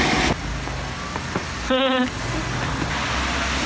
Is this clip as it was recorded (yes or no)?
yes